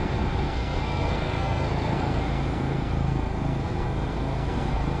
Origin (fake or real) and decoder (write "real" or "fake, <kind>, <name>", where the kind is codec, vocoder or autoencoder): fake, codec, SNAC